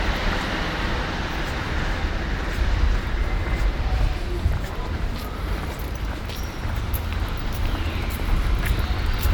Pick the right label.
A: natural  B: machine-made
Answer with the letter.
B